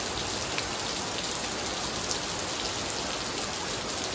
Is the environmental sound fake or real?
real